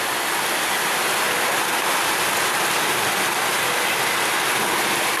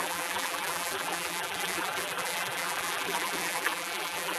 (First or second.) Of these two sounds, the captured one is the first